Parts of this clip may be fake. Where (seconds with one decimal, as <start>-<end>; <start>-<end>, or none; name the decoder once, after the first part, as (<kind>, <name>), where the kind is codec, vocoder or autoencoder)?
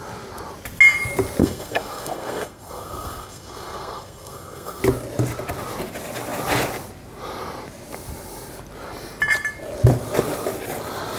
1.4-4.8 (codec, SNAC)